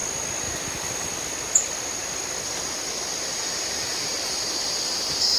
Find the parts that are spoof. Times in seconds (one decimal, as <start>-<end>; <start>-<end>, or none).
3.2-5.4